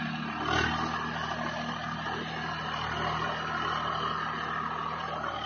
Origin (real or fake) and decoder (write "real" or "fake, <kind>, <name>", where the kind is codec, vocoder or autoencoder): real